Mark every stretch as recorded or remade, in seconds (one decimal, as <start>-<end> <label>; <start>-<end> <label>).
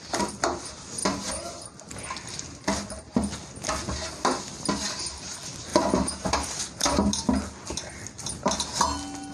0.0-5.7 recorded; 5.7-6.6 remade; 6.6-9.3 recorded